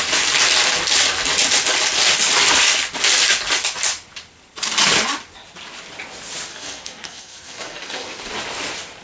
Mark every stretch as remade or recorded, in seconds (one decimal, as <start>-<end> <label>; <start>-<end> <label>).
0.0-6.5 recorded; 6.5-8.2 remade; 8.2-9.0 recorded